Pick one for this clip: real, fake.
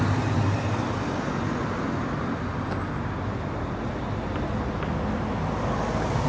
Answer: real